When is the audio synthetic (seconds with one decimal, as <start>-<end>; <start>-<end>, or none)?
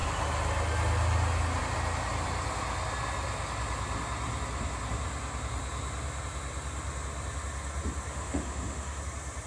8.1-9.0